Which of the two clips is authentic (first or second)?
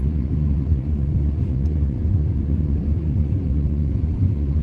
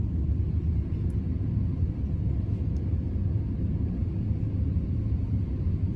second